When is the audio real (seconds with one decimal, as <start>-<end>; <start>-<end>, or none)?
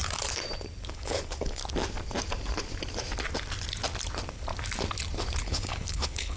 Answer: 0.0-0.9; 1.6-5.4